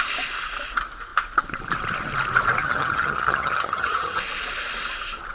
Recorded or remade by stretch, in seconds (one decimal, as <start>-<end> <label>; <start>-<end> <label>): 0.0-2.6 recorded; 2.6-4.2 remade; 4.2-5.3 recorded